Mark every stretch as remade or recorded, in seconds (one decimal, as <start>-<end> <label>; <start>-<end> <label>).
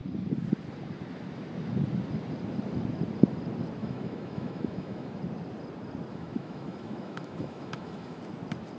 0.0-3.8 recorded; 3.8-5.2 remade; 5.2-6.1 recorded; 6.1-8.2 remade; 8.2-8.8 recorded